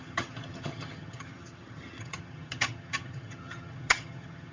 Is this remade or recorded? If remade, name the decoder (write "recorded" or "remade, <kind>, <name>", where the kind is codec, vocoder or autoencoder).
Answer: remade, vocoder, HiFi-GAN